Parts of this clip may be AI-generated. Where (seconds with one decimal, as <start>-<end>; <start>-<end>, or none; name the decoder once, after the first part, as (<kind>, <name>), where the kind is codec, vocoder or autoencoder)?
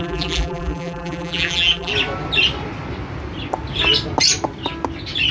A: 0.0-1.9 (vocoder, BigVGAN v2)